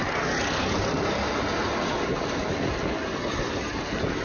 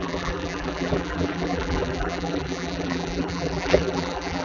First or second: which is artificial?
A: second